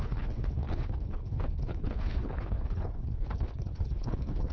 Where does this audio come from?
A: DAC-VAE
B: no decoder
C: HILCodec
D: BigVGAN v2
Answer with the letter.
C